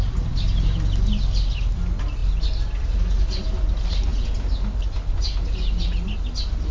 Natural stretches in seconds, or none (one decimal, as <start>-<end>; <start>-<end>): 0.0-6.7

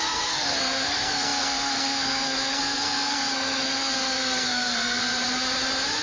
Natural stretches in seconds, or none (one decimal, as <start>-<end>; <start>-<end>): 5.1-6.0